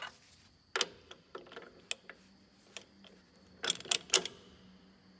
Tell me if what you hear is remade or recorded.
recorded